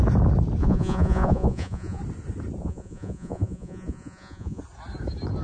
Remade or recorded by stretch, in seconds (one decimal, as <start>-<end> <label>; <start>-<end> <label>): 0.0-0.6 recorded; 0.6-2.0 remade; 2.0-2.6 recorded; 2.6-4.6 remade; 4.6-5.4 recorded